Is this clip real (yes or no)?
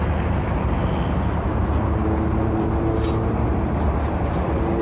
yes